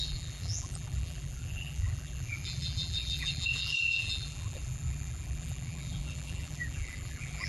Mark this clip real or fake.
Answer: fake